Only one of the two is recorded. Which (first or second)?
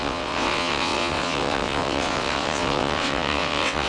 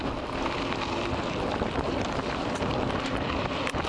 second